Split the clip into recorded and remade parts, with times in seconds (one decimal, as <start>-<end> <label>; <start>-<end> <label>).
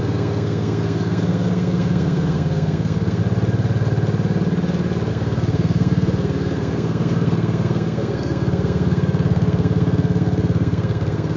0.0-3.2 remade; 3.2-5.1 recorded; 5.1-11.4 remade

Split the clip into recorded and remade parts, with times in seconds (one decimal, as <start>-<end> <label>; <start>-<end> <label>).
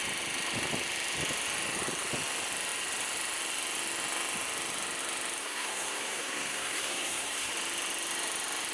0.0-5.4 recorded; 5.4-7.5 remade; 7.5-8.7 recorded